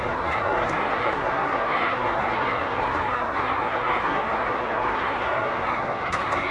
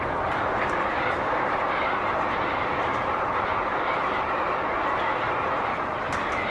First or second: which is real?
second